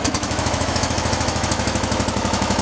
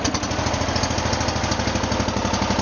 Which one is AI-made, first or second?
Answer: first